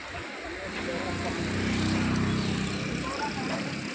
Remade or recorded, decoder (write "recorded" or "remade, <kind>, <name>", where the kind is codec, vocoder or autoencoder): recorded